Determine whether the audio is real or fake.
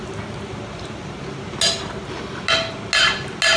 real